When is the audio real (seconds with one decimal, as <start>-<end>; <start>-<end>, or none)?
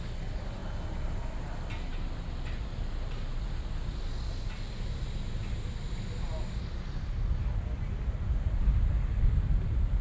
0.0-10.0